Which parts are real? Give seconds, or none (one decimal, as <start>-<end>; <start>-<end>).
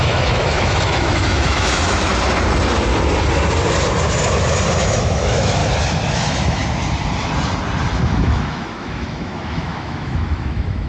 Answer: 2.1-4.8; 5.6-6.1; 6.6-7.9